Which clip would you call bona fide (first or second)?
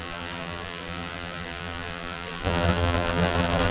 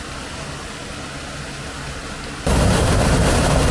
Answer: second